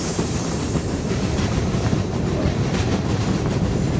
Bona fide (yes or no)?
no